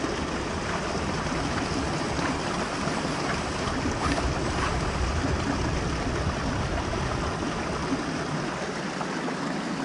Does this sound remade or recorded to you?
recorded